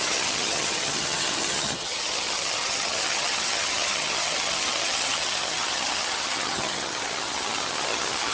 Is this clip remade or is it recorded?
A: remade